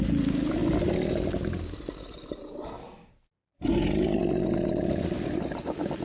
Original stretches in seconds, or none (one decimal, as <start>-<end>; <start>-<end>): 0.0-6.0